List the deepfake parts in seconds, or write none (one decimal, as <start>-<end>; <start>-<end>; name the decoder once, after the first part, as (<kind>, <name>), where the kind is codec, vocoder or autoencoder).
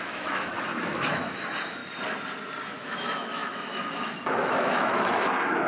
0.0-1.8 (autoencoder, DAC-VAE); 2.6-5.7